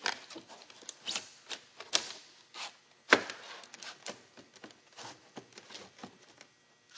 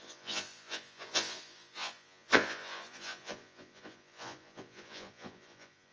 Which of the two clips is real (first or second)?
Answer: first